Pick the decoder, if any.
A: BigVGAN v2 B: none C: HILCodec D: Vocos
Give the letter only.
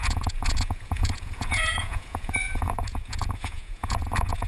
D